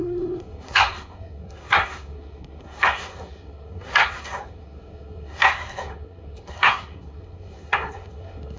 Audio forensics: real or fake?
fake